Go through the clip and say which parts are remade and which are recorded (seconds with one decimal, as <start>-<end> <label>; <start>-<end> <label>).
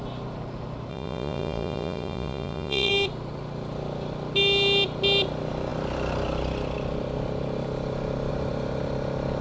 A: 0.0-0.9 recorded; 0.9-2.9 remade; 2.9-9.4 recorded